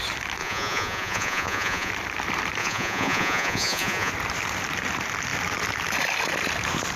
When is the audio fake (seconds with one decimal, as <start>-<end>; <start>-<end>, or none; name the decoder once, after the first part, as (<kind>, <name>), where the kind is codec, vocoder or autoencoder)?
0.4-1.9 (vocoder, Vocos); 2.6-4.1